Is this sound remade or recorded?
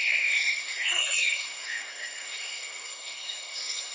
remade